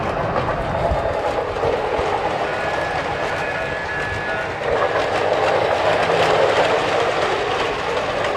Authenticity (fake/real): real